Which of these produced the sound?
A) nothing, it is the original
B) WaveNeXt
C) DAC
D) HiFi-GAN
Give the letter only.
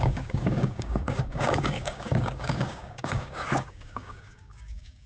C